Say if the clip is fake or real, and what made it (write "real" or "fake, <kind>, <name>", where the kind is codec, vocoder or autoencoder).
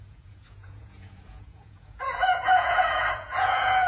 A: fake, vocoder, Vocos